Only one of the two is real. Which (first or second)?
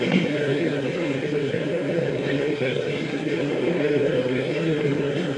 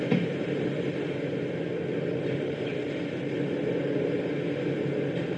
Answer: second